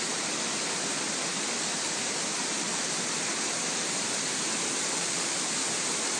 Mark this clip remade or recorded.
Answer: recorded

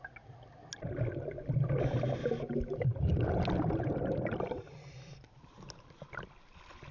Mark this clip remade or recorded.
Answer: recorded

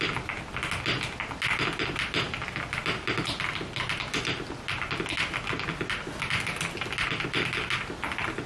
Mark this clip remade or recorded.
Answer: recorded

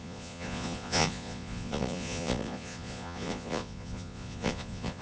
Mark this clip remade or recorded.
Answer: remade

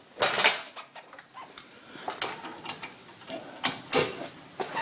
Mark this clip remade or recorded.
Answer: recorded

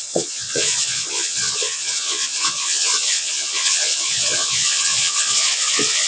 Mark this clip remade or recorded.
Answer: remade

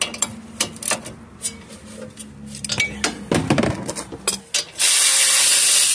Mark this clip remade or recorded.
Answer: recorded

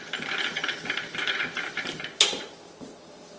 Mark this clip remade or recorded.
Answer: remade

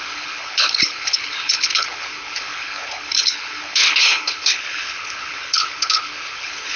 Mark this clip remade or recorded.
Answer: remade